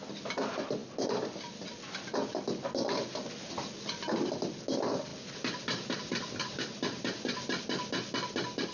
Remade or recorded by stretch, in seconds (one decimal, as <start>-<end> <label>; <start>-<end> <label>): 0.0-8.7 recorded